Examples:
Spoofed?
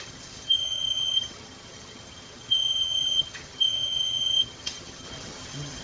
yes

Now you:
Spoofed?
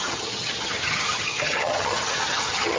yes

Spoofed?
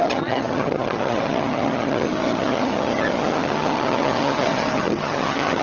yes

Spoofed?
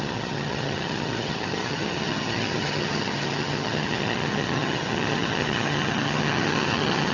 yes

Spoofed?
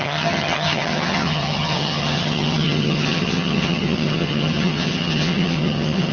yes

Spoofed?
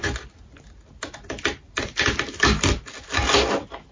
no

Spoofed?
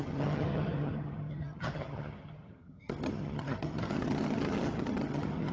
yes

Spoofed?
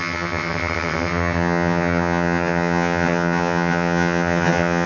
yes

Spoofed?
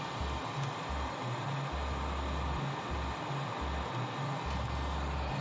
no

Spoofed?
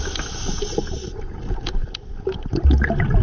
no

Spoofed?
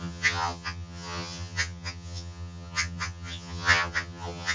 yes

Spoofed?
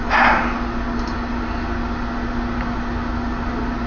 no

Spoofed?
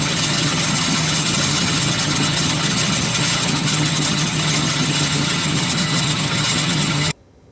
yes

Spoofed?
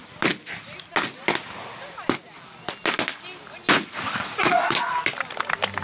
no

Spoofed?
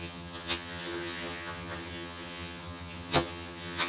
yes